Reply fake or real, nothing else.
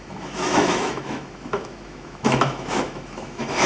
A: fake